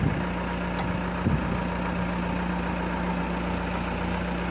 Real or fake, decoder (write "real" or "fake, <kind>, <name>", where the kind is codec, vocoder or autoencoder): real